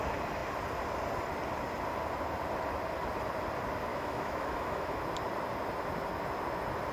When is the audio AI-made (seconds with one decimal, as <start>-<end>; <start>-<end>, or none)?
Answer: 3.9-5.0